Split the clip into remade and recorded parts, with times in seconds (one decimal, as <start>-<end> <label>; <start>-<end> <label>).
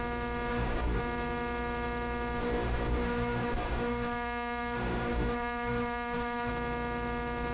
0.0-0.5 recorded; 0.5-1.0 remade; 1.0-2.4 recorded; 2.4-6.5 remade; 6.5-7.5 recorded